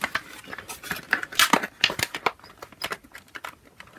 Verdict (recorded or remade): recorded